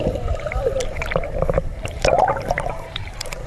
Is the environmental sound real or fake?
fake